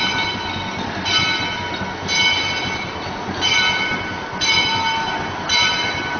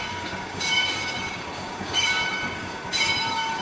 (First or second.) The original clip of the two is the first